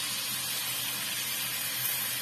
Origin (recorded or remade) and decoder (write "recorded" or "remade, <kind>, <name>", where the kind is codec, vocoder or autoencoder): recorded